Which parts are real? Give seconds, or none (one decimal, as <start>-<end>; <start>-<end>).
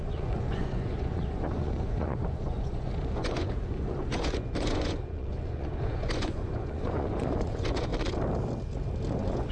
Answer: 7.9-9.1